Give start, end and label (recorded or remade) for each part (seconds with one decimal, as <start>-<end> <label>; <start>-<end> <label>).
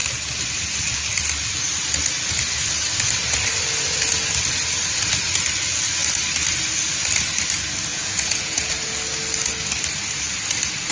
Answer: 0.0-7.9 recorded; 7.9-8.7 remade; 8.7-10.9 recorded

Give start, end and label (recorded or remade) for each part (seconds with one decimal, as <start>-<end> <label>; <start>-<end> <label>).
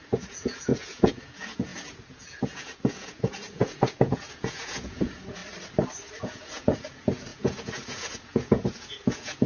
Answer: 0.0-5.4 remade; 5.4-6.2 recorded; 6.2-9.5 remade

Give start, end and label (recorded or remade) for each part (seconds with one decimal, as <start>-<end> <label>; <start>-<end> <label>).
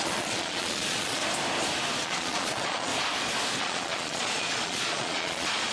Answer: 0.0-1.2 remade; 1.2-2.0 recorded; 2.0-2.9 remade; 2.9-3.6 recorded; 3.6-5.7 remade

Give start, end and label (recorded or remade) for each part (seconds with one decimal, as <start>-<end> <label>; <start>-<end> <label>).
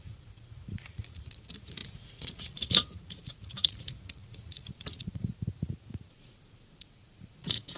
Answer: 0.0-5.3 remade; 5.3-6.1 recorded; 6.1-7.8 remade